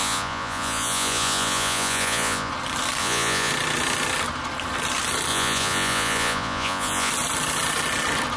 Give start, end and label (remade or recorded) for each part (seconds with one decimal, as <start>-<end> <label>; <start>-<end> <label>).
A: 0.0-2.5 remade; 2.5-3.0 recorded; 3.0-3.5 remade; 3.5-5.3 recorded; 5.3-7.1 remade; 7.1-8.4 recorded

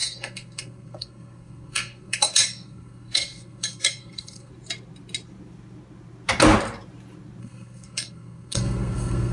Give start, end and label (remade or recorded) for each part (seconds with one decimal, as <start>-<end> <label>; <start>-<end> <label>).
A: 0.0-4.5 remade; 4.5-7.4 recorded; 7.4-9.3 remade

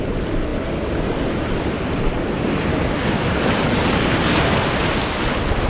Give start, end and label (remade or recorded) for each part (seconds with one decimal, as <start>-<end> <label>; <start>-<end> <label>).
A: 0.0-5.7 recorded